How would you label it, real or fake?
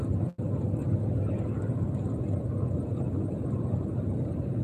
real